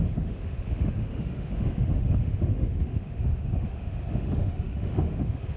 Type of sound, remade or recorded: remade